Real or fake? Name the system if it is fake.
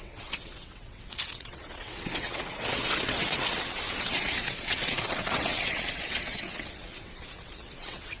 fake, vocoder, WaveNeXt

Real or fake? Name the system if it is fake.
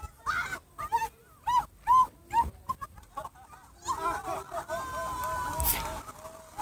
real